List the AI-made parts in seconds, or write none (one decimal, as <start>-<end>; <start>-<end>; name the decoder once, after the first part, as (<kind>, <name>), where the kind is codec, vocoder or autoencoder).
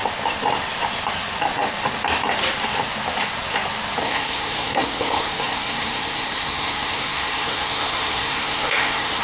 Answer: 4.0-9.2 (codec, SNAC)